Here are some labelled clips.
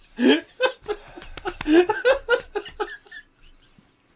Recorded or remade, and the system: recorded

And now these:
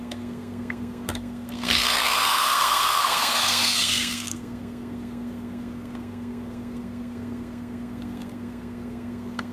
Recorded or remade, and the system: remade, codec, SNAC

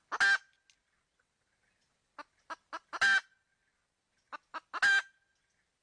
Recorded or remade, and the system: recorded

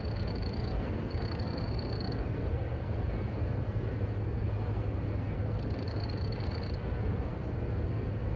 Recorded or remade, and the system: remade, codec, SNAC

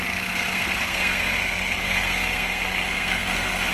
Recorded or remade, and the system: remade, codec, SNAC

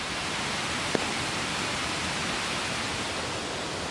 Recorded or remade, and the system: recorded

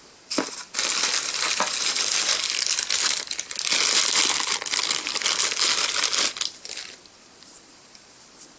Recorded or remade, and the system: recorded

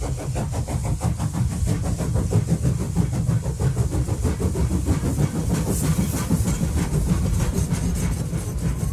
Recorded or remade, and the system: recorded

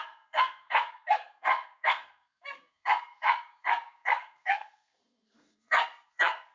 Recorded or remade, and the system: remade, codec, SNAC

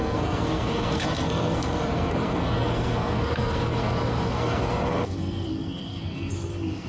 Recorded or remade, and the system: remade, codec, SNAC